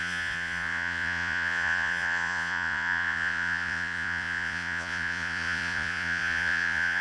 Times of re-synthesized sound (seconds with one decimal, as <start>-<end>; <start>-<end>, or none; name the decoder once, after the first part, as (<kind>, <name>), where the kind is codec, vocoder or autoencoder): 0.0-7.0 (vocoder, Vocos)